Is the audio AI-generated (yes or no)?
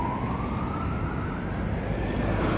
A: no